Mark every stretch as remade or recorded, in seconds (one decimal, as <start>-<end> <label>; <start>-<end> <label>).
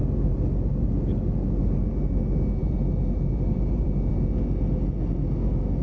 0.0-2.6 recorded; 2.6-4.1 remade; 4.1-5.8 recorded